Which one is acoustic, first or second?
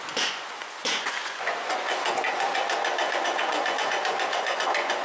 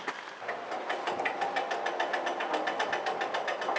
second